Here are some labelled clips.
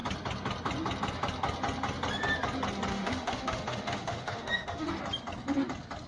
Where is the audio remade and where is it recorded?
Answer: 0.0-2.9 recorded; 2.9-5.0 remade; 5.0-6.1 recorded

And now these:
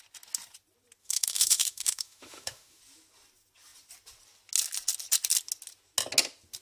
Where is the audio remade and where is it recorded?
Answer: 0.0-1.0 recorded; 1.0-2.8 remade; 2.8-6.6 recorded

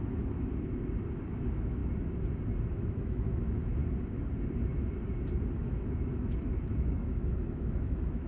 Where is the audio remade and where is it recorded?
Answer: 0.0-0.5 remade; 0.5-1.3 recorded; 1.3-1.8 remade; 1.8-2.7 recorded; 2.7-3.8 remade; 3.8-5.6 recorded; 5.6-8.3 remade

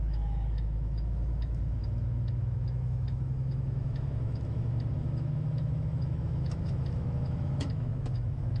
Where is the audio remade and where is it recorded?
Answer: 0.0-8.6 remade

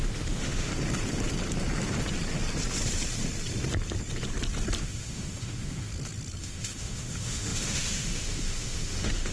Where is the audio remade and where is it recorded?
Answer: 0.0-0.7 remade; 0.7-4.8 recorded; 4.8-5.9 remade; 5.9-6.4 recorded; 6.4-9.3 remade